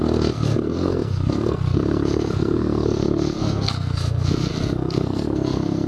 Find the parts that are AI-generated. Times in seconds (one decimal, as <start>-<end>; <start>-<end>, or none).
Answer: 0.0-5.9